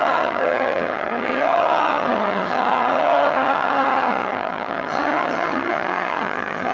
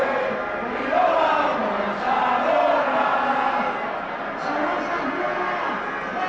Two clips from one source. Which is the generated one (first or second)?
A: first